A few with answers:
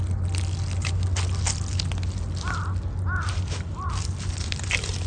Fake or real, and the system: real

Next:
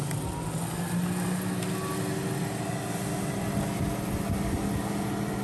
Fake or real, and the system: real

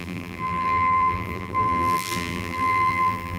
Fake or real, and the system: fake, vocoder, BigVGAN v2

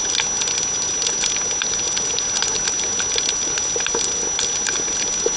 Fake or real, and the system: real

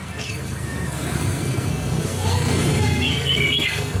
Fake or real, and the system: fake, codec, SNAC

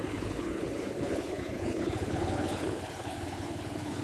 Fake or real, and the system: fake, codec, HILCodec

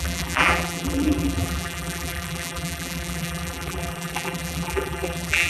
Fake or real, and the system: fake, vocoder, BigVGAN v2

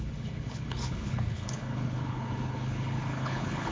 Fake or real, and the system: fake, codec, HILCodec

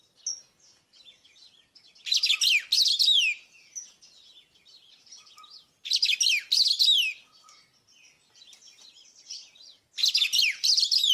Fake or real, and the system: real